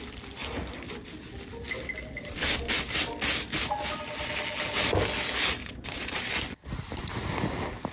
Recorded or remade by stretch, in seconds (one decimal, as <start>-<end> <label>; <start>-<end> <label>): 0.0-5.6 recorded; 5.6-6.2 remade; 6.2-7.9 recorded